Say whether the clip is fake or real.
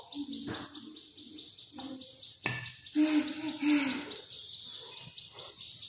real